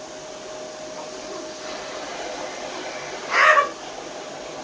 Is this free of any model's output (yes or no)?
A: yes